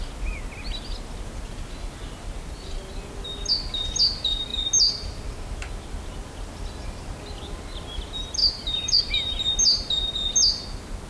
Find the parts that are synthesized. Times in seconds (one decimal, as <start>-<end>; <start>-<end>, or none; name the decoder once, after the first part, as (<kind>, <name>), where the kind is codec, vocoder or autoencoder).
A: 8.4-9.0 (vocoder, BigVGAN v2)